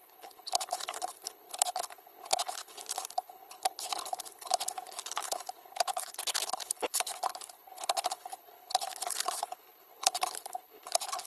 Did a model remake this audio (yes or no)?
yes